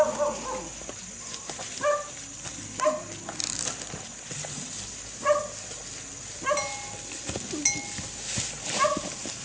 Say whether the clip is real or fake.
real